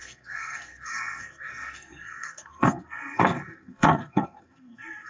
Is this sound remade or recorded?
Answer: remade